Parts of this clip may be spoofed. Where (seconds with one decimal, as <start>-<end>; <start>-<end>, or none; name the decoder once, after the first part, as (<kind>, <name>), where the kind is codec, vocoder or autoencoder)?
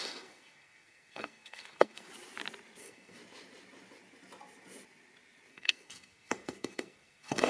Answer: 0.0-2.1 (codec, SNAC); 2.8-3.2; 5.5-7.5